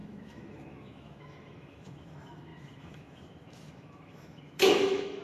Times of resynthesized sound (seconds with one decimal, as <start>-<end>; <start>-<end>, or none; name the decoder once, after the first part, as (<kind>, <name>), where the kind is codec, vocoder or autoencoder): 0.0-5.2 (autoencoder, DAC-VAE)